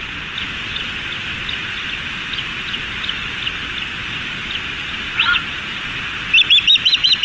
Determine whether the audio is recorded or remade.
recorded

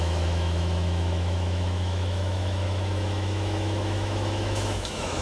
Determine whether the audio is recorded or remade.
remade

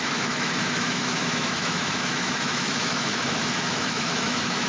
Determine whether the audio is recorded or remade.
remade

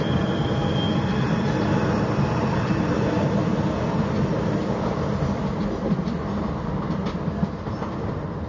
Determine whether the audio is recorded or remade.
recorded